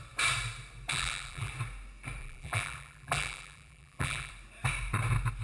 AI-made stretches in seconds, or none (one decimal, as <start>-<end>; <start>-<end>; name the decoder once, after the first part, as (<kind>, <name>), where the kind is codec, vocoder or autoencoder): 0.9-1.5 (vocoder, BigVGAN v2); 2.2-4.3